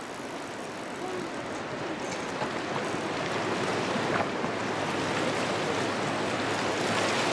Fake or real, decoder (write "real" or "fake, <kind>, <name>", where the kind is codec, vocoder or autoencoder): real